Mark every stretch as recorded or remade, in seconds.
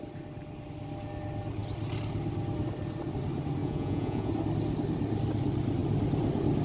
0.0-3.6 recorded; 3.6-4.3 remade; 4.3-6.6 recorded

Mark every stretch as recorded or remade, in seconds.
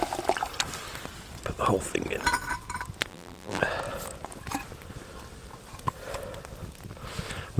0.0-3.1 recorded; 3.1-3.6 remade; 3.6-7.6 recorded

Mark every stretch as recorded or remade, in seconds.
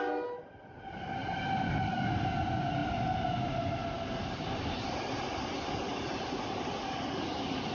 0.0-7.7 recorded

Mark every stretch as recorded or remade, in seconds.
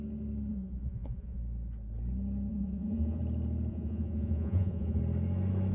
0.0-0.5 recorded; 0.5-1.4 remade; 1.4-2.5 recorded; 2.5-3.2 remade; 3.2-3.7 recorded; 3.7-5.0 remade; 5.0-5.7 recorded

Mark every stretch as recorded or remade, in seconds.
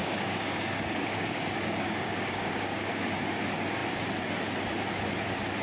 0.0-3.0 remade; 3.0-5.6 recorded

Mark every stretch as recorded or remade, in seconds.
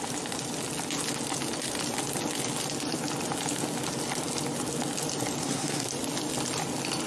0.0-5.4 recorded; 5.4-5.9 remade; 5.9-7.1 recorded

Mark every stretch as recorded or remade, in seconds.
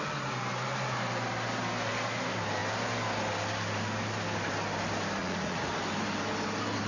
0.0-5.2 recorded; 5.2-5.7 remade; 5.7-6.9 recorded